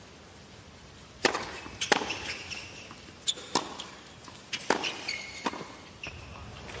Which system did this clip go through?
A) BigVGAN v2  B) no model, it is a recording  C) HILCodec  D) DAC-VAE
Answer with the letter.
B